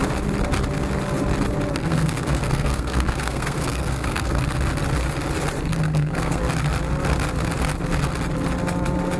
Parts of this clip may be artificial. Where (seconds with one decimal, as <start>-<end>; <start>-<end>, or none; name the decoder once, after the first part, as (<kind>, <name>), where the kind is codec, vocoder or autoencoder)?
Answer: 1.8-4.4 (codec, SNAC); 5.7-6.4

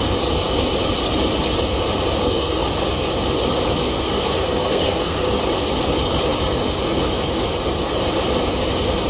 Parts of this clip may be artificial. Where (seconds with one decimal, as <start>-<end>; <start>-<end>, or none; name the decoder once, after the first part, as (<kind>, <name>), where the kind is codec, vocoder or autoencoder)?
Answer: 2.2-2.7 (codec, SNAC); 3.9-5.4

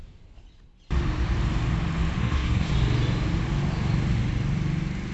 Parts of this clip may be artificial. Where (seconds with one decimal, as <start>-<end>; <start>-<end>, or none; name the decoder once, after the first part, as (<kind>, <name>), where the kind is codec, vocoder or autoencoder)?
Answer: 2.2-2.7 (codec, SNAC)

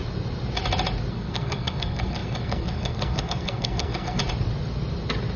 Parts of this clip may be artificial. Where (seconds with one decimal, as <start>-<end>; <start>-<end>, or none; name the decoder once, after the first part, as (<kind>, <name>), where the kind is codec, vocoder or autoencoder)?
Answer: 1.1-4.2 (codec, SNAC)

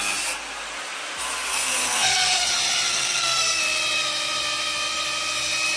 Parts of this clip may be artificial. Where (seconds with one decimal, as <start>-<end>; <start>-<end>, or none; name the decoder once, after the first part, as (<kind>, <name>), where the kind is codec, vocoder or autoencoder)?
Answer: 1.5-2.5 (codec, SNAC); 2.9-3.6